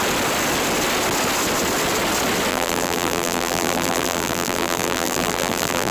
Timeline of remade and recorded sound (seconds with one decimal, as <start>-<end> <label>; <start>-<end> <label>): 0.0-2.5 recorded; 2.5-5.9 remade